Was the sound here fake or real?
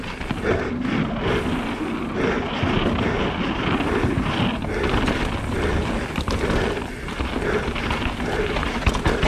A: real